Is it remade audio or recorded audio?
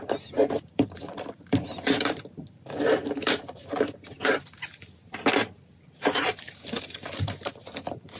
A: remade